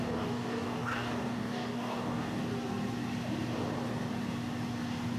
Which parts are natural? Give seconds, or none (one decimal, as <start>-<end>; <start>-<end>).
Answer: 2.4-5.2